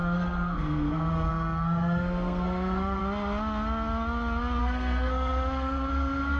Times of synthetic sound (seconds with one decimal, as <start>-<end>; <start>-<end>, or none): 0.0-3.0; 4.6-6.4